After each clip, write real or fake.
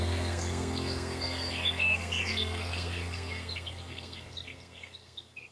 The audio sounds fake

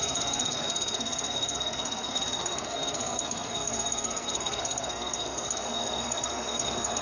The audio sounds fake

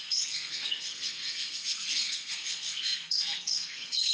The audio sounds fake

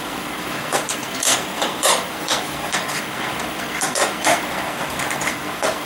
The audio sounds fake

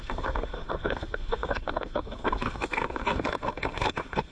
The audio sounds fake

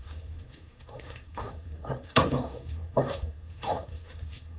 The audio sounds fake